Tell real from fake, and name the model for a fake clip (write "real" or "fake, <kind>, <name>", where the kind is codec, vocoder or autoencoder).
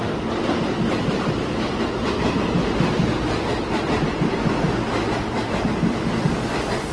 real